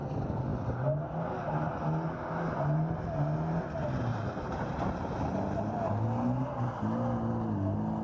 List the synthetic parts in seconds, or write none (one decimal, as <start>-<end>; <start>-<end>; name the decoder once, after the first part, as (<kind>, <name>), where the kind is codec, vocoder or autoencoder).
4.1-5.9 (vocoder, BigVGAN v2)